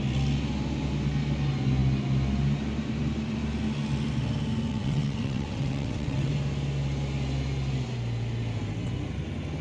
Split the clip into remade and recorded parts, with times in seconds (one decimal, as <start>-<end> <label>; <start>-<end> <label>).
0.0-4.7 recorded; 4.7-6.3 remade; 6.3-9.6 recorded